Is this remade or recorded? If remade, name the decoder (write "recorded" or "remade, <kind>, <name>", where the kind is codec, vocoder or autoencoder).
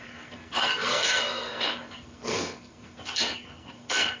remade, codec, SNAC